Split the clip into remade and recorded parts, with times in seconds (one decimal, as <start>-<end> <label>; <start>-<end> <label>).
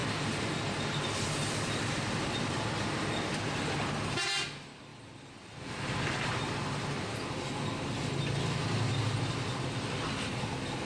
0.0-10.8 recorded